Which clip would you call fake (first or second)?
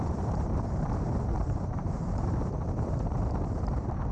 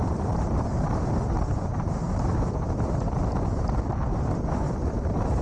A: first